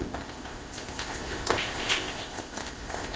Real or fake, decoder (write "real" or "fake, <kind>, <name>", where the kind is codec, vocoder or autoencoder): fake, codec, ZipCodec